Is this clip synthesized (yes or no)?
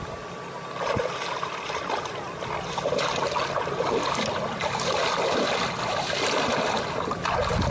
no